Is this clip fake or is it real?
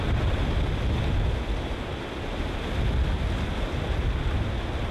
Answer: real